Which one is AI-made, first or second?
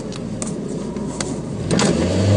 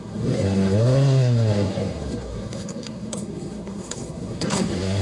second